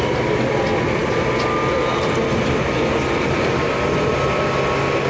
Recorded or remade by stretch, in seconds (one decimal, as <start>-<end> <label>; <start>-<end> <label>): 0.0-5.1 recorded